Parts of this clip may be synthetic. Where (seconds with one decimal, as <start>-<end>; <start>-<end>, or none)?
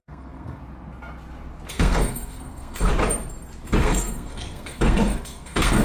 0.0-0.6; 1.7-2.9; 3.8-5.8